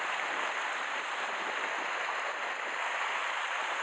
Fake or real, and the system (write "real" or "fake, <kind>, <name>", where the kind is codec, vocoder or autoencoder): real